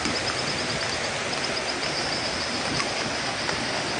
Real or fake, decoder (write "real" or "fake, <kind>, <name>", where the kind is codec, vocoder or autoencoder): real